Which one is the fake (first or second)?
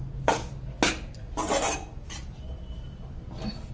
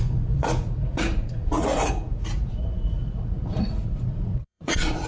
second